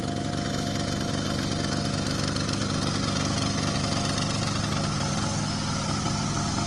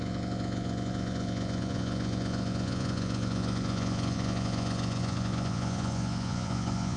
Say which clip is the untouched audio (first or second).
first